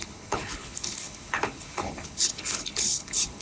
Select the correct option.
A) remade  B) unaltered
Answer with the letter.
A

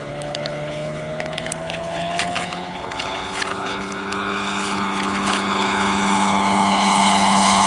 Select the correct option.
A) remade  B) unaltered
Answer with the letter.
A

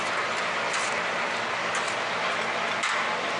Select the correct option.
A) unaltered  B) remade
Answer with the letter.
A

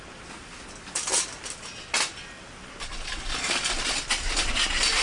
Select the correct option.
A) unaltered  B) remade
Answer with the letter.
A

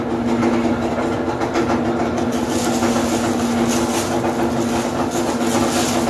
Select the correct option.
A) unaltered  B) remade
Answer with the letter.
A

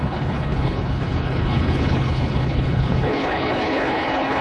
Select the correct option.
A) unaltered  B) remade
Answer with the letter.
B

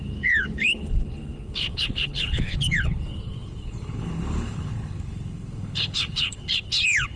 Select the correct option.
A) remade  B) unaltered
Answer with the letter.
A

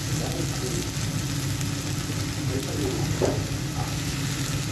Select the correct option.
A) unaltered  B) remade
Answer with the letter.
A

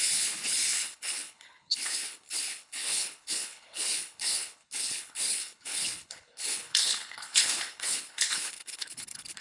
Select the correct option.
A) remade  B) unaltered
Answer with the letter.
A